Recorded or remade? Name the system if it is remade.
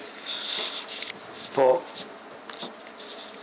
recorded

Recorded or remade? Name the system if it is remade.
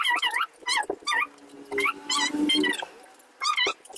recorded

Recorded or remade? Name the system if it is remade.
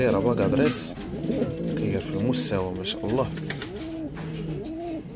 recorded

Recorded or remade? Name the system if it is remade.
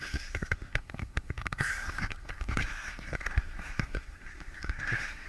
remade, codec, SNAC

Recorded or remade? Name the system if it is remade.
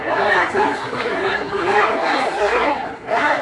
remade, codec, SNAC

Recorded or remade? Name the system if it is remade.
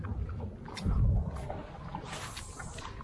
recorded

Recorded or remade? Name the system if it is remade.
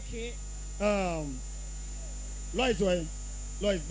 recorded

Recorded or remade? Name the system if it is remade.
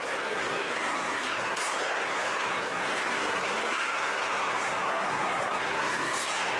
remade, codec, SNAC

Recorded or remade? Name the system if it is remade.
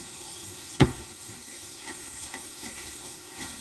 remade, codec, SNAC